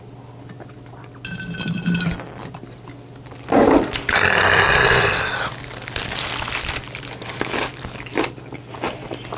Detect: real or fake real